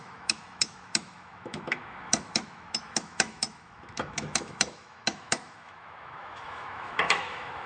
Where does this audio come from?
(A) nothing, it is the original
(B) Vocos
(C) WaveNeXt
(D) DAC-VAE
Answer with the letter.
D